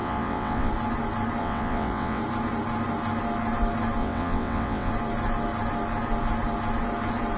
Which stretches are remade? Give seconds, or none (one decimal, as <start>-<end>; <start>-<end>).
0.0-0.7; 1.4-2.2; 4.0-4.9